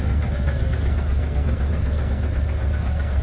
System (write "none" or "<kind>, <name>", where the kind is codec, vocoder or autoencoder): codec, SNAC